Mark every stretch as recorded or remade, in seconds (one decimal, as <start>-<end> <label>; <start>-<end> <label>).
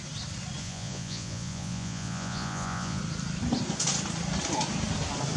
0.0-0.6 recorded; 0.6-3.0 remade; 3.0-5.4 recorded